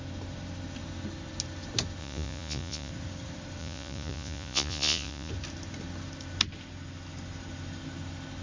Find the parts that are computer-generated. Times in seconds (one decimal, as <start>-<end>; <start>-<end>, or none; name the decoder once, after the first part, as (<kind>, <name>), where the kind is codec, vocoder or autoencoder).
2.0-2.9 (vocoder, Vocos); 3.6-5.3